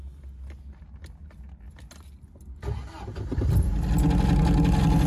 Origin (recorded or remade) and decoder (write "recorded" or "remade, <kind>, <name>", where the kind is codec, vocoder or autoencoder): recorded